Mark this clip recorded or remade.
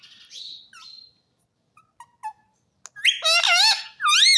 recorded